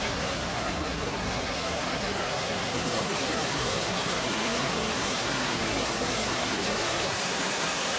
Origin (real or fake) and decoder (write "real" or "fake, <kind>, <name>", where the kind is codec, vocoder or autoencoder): fake, codec, SNAC